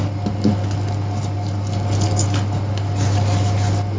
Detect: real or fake real